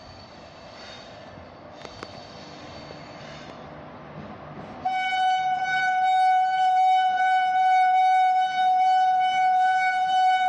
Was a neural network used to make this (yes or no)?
no